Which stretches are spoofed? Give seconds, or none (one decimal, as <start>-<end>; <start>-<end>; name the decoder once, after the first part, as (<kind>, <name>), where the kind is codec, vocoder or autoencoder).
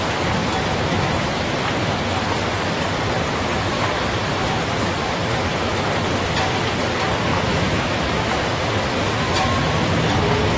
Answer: 0.4-1.3 (autoencoder, DAC-VAE); 7.3-8.3